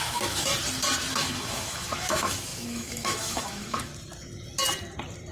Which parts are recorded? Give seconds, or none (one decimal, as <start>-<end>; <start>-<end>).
0.5-1.1; 3.9-5.3

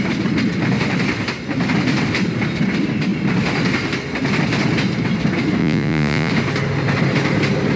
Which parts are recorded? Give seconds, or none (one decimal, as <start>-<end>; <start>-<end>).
0.0-5.6; 6.3-7.8

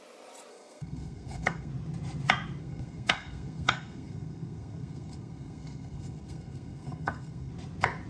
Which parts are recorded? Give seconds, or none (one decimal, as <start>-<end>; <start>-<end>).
0.0-0.5; 1.7-2.6; 7.5-8.1

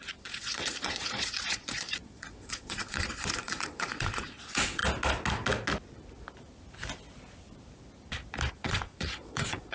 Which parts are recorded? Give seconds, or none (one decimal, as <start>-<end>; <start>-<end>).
4.8-8.5